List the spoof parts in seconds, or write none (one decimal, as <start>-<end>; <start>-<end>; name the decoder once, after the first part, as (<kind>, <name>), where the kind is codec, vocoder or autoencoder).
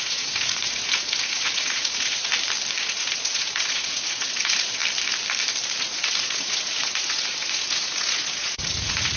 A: 0.0-2.3 (vocoder, Vocos); 2.8-4.8; 5.8-9.2